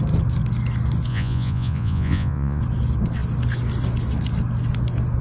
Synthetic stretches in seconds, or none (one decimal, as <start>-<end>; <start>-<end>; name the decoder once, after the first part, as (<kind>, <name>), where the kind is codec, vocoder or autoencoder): 1.1-2.6 (vocoder, Vocos)